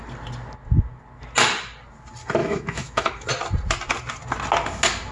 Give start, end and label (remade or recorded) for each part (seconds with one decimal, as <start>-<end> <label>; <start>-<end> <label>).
0.0-2.4 recorded; 2.4-3.3 remade; 3.3-5.1 recorded